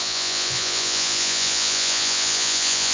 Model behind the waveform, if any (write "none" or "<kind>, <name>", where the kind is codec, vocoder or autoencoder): vocoder, Vocos